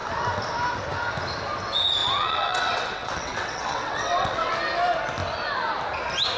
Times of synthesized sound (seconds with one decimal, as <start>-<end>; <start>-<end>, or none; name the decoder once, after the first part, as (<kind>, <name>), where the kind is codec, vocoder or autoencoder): 2.0-4.5 (vocoder, WaveNeXt)